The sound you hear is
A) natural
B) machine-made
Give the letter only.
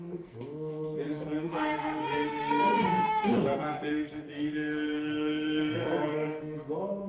B